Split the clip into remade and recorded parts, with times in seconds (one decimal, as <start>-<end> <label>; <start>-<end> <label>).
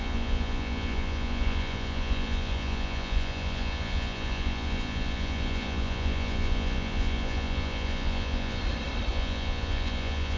0.0-8.6 remade; 8.6-9.1 recorded; 9.1-10.4 remade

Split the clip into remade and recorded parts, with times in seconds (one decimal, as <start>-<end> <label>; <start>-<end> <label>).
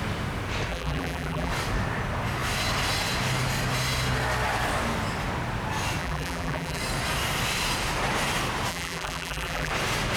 0.0-0.7 recorded; 0.7-1.5 remade; 1.5-6.0 recorded; 6.0-6.8 remade; 6.8-8.7 recorded; 8.7-9.7 remade; 9.7-10.2 recorded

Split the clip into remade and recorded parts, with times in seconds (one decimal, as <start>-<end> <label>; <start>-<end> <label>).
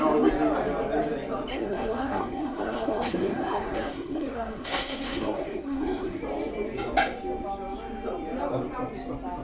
0.0-1.5 recorded; 1.5-6.2 remade; 6.2-9.4 recorded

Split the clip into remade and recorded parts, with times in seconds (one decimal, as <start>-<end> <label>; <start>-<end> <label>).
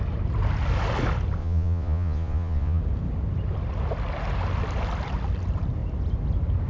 0.0-1.4 recorded; 1.4-2.8 remade; 2.8-6.7 recorded